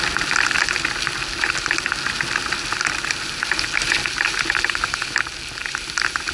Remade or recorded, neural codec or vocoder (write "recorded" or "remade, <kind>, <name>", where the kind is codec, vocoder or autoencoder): recorded